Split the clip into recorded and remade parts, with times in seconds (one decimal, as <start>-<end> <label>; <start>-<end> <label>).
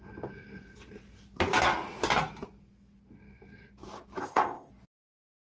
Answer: 0.0-4.2 recorded; 4.2-4.7 remade; 4.7-5.4 recorded